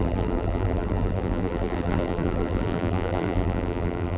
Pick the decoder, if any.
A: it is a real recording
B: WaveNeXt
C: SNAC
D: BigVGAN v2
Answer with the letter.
D